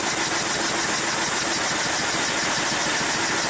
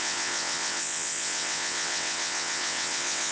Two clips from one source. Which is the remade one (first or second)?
second